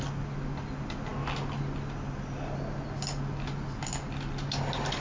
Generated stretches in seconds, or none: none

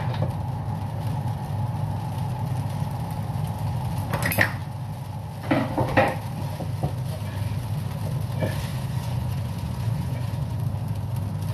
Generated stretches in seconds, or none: 8.7-10.6 (vocoder, Vocos)

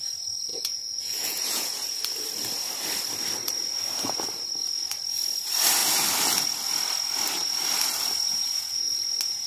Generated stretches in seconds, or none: 0.5-2.0 (vocoder, Vocos)

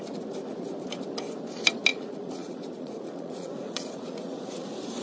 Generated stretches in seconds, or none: 1.9-5.0 (vocoder, Vocos)

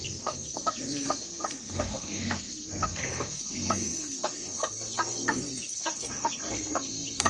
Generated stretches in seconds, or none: 0.0-7.3 (codec, SNAC)

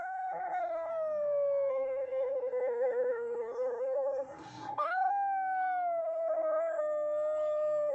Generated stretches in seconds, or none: 0.0-0.9 (codec, SNAC); 1.7-5.1; 6.0-6.8

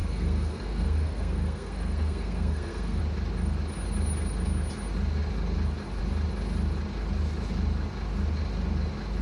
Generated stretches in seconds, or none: 0.0-3.0 (codec, SNAC)

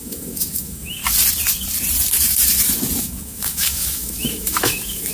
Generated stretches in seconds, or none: 0.0-1.0 (autoencoder, DAC-VAE); 3.0-5.1